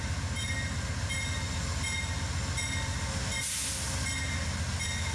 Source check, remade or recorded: recorded